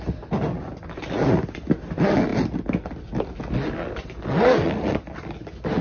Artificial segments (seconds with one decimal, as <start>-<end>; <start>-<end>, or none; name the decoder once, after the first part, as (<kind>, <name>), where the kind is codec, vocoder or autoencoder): none